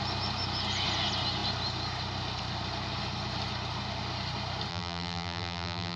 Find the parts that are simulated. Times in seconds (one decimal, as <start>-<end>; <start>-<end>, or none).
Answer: 4.7-6.0